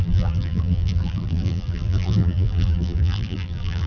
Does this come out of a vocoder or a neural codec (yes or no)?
yes